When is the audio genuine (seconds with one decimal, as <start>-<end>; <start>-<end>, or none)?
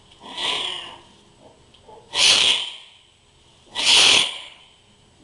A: 0.0-3.9; 4.6-5.2